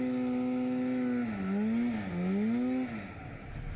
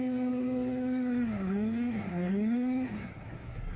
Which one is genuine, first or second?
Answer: first